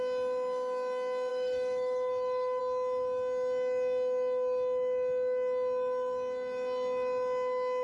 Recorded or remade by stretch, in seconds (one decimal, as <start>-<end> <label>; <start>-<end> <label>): 0.0-1.3 recorded; 1.3-2.6 remade; 2.6-7.8 recorded